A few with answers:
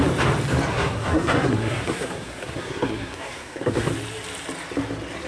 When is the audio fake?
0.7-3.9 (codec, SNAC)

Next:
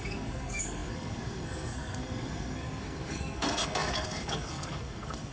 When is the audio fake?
0.0-5.3 (codec, SNAC)

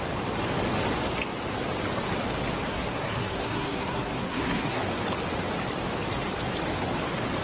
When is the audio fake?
2.7-4.8 (codec, SNAC)

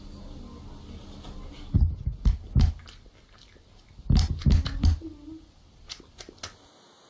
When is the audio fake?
none

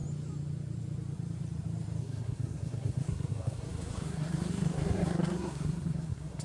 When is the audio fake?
2.0-6.4 (codec, SNAC)